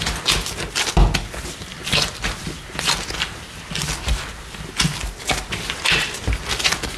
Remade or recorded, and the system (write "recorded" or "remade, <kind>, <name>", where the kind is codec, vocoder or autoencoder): recorded